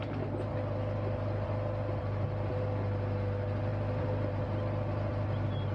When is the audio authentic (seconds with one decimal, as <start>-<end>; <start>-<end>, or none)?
0.0-5.7